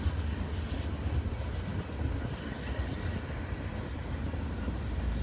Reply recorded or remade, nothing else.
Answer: recorded